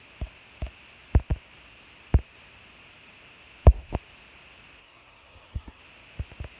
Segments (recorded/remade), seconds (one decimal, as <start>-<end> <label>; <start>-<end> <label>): 0.0-4.8 recorded; 4.8-5.8 remade; 5.8-6.6 recorded

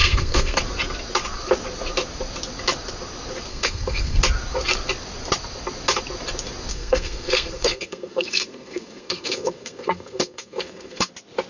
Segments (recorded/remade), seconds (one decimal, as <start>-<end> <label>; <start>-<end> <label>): 0.0-0.6 remade; 0.6-3.5 recorded; 3.5-4.2 remade; 4.2-6.7 recorded; 6.7-11.1 remade; 11.1-11.5 recorded